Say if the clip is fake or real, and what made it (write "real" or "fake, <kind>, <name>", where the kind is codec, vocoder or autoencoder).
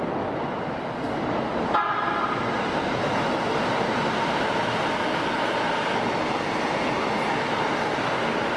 real